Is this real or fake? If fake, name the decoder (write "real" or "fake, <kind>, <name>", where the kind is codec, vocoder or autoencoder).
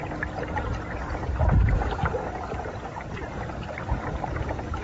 real